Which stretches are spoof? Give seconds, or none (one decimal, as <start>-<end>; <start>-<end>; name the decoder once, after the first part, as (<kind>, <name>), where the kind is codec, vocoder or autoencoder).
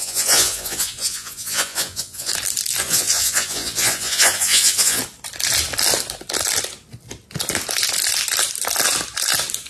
0.0-2.3 (vocoder, Vocos); 2.8-5.0